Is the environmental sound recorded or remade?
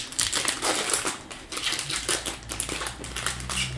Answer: recorded